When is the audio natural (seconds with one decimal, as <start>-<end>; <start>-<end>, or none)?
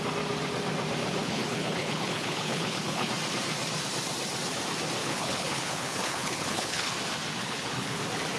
0.0-1.2; 3.1-5.0; 6.9-7.4; 8.0-8.4